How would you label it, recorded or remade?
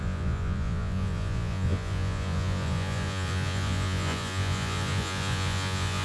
remade